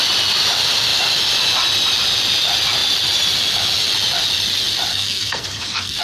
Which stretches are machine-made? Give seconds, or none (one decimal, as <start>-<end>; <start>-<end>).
4.9-6.0